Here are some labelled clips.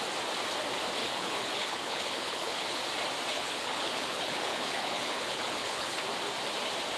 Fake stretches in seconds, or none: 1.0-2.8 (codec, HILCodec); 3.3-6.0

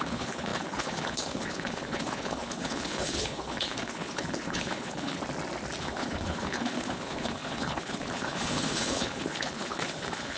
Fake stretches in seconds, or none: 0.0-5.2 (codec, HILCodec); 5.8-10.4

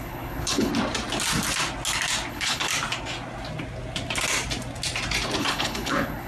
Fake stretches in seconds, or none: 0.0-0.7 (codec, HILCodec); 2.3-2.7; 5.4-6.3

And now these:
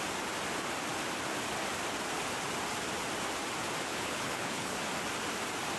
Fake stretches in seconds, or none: 3.9-4.8 (codec, HILCodec)

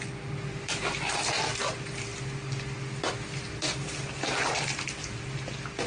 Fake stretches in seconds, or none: none